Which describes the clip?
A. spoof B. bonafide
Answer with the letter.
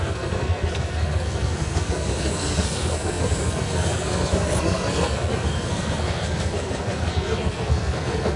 A